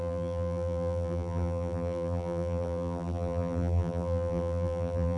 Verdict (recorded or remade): remade